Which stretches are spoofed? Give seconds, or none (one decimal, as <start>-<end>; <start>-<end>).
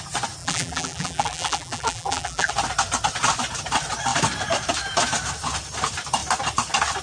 0.4-2.5